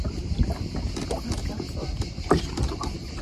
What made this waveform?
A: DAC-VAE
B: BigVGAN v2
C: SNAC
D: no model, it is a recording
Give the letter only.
D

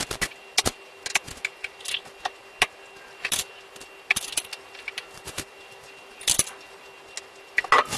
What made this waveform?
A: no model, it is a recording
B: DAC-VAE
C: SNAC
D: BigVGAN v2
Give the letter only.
A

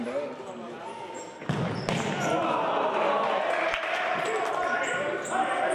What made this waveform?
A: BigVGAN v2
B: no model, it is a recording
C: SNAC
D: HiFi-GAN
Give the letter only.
B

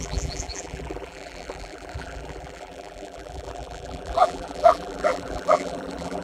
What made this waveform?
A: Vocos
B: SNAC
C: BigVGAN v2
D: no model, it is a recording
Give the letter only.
C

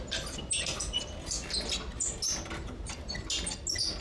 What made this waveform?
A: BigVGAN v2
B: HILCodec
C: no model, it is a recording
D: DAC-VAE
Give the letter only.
C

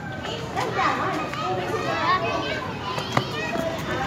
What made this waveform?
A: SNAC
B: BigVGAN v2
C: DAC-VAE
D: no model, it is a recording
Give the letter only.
D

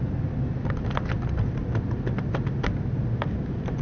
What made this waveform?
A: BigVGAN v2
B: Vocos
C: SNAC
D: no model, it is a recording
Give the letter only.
D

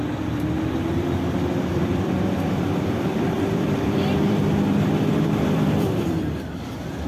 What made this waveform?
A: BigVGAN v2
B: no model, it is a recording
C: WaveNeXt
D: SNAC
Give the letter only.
A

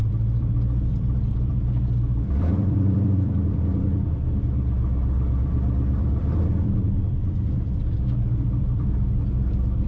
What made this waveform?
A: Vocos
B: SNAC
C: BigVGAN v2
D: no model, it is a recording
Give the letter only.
C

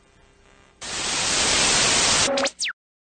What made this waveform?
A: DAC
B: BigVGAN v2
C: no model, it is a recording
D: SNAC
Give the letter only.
C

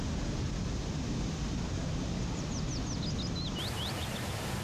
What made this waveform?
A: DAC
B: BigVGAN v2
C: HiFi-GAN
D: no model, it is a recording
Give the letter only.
D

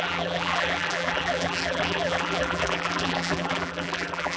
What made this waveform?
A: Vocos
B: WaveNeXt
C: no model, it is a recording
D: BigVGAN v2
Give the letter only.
D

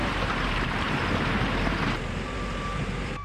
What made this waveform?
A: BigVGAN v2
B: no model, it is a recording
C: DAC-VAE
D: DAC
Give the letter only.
A